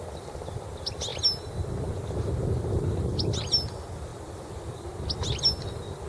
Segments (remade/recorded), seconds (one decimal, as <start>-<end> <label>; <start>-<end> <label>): 0.0-4.1 recorded; 4.1-4.7 remade; 4.7-6.1 recorded